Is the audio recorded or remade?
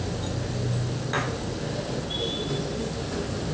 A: recorded